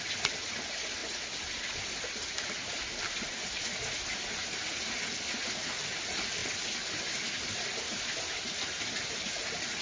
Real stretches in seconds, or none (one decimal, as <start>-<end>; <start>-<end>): 0.0-9.8

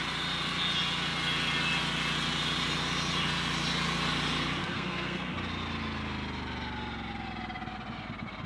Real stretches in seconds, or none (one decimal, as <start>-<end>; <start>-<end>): 0.0-4.6; 5.3-8.5

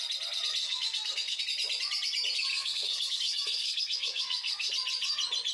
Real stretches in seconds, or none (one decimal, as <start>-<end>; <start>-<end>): 0.0-0.6; 1.4-2.5; 4.7-5.5